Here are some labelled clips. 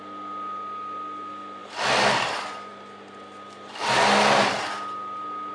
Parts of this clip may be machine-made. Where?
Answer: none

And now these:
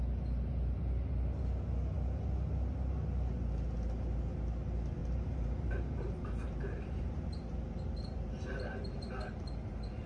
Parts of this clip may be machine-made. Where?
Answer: 5.0-9.7 (vocoder, BigVGAN v2)

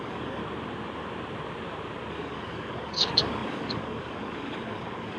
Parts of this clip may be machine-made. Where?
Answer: 0.0-0.4 (codec, DAC); 2.1-5.2